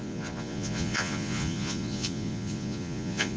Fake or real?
fake